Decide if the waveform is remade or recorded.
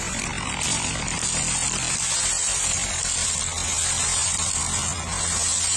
recorded